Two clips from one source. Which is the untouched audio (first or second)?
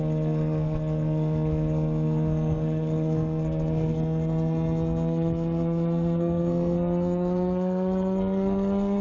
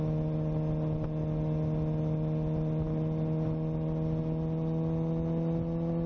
second